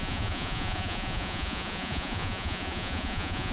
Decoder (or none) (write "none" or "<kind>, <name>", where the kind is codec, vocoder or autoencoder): vocoder, Vocos